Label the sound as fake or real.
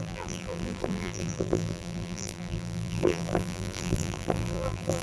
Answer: fake